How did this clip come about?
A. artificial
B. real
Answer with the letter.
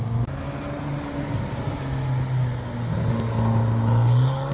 B